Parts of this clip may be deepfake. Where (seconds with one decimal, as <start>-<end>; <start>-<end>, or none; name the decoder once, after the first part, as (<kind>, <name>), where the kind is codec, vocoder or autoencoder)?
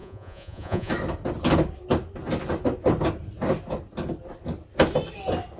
0.0-0.9 (vocoder, Vocos)